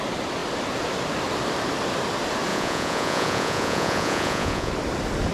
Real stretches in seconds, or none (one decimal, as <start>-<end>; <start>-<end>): 0.0-2.5; 4.7-5.3